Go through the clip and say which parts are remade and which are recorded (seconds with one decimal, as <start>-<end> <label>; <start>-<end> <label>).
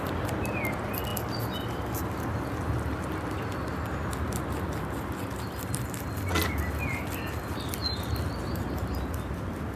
0.0-9.8 recorded